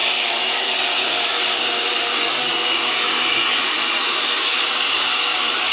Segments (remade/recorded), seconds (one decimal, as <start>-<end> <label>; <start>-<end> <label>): 0.0-5.7 remade

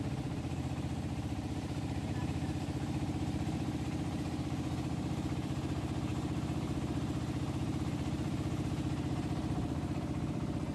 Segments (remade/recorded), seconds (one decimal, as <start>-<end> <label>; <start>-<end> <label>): 0.0-10.7 remade

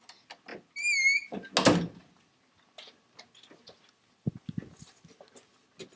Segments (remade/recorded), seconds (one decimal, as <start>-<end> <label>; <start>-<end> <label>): 0.0-6.0 recorded

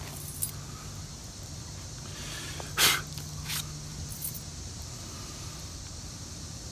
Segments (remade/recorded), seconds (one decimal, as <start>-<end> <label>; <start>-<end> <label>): 0.0-3.9 recorded; 3.9-5.6 remade; 5.6-6.7 recorded

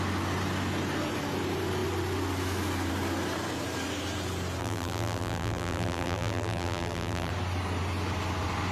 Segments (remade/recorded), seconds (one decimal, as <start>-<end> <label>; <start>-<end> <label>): 0.0-4.6 recorded; 4.6-7.3 remade; 7.3-8.7 recorded